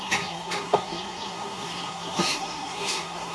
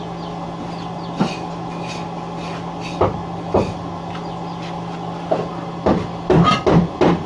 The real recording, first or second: second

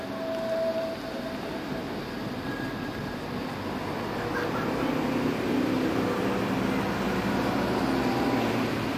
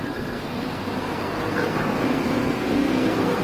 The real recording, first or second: first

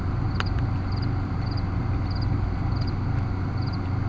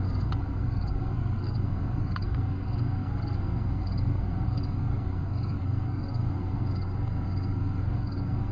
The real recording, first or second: first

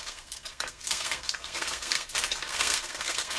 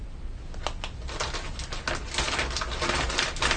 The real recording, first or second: second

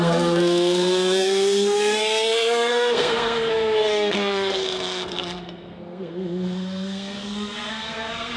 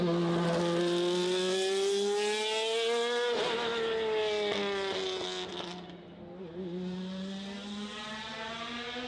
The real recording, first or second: second